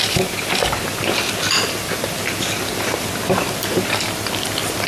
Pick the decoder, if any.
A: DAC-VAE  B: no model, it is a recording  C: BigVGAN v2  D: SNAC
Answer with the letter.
B